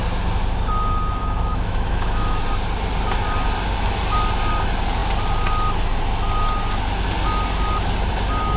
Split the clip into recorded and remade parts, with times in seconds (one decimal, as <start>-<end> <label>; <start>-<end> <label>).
0.0-1.2 recorded; 1.2-2.4 remade; 2.4-8.6 recorded